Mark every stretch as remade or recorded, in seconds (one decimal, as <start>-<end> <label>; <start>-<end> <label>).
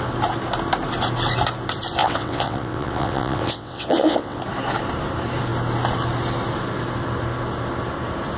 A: 0.0-2.0 recorded; 2.0-4.4 remade; 4.4-8.4 recorded